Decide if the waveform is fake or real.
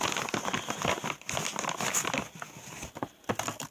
real